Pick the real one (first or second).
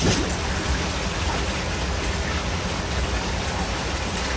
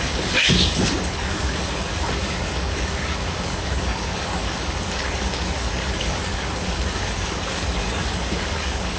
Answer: first